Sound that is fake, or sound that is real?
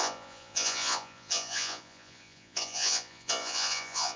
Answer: fake